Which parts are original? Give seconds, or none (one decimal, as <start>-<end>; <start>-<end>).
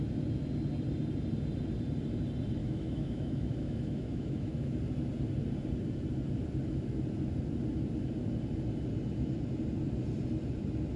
0.0-2.6; 4.8-11.0